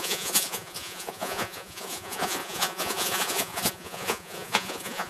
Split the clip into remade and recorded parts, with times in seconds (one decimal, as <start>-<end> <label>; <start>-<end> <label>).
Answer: 0.0-5.1 remade